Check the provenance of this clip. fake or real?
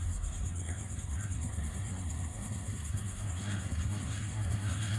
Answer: fake